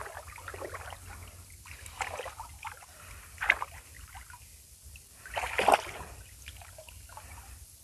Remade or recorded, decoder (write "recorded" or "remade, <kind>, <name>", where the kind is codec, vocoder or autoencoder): remade, vocoder, BigVGAN v2